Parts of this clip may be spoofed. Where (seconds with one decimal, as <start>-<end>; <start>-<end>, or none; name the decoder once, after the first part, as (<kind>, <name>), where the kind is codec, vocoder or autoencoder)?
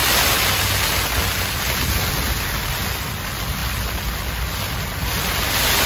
none